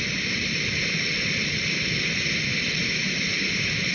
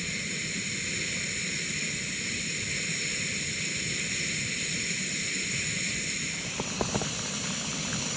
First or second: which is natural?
second